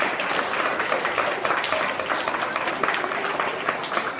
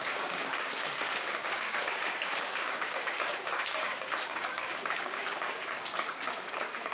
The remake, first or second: second